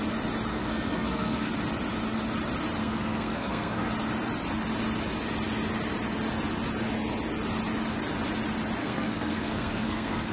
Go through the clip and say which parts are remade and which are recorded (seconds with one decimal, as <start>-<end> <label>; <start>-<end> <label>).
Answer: 0.0-0.5 recorded; 0.5-1.5 remade; 1.5-2.8 recorded; 2.8-3.9 remade; 3.9-8.8 recorded; 8.8-10.3 remade